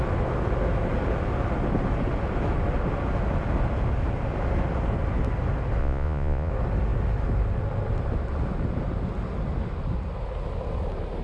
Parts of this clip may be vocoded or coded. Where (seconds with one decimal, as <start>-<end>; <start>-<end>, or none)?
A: 5.8-6.5